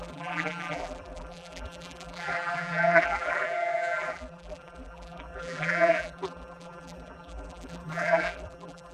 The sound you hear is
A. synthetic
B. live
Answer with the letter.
A